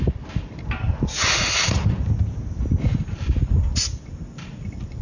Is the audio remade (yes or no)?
no